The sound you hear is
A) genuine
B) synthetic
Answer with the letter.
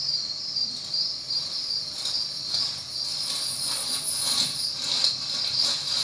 A